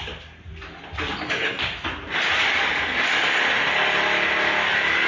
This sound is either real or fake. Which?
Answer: real